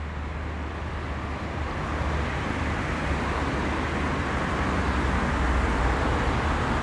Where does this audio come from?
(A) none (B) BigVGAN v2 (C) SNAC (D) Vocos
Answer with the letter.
A